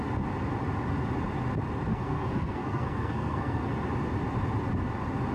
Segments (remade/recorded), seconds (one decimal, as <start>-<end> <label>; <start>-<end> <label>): 0.0-1.9 recorded; 1.9-3.7 remade; 3.7-5.3 recorded